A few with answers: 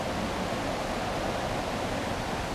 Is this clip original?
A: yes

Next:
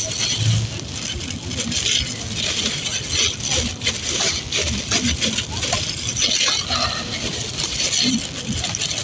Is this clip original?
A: yes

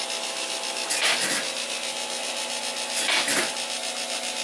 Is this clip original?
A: yes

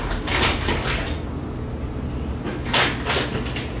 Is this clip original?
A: yes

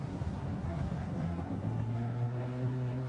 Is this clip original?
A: no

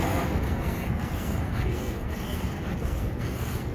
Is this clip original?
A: no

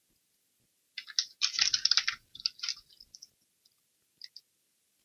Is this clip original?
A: yes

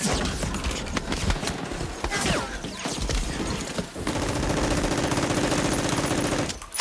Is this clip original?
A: yes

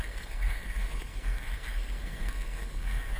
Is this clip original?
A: no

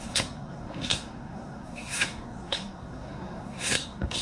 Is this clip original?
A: no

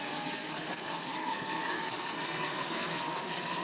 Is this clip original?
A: no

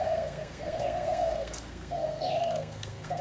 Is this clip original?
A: no